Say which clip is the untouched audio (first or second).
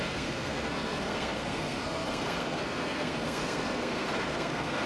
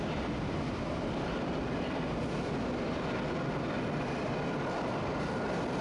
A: second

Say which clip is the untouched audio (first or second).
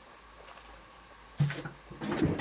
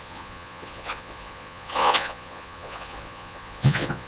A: first